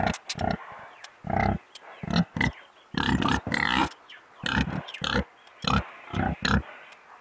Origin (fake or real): real